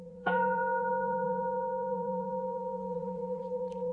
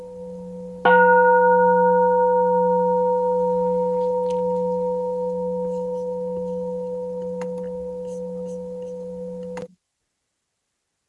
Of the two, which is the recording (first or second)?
second